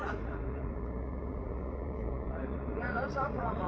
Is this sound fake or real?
fake